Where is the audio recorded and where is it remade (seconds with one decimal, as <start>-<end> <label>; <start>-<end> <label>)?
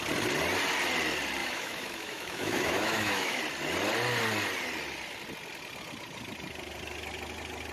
0.0-1.4 recorded; 1.4-3.4 remade; 3.4-7.7 recorded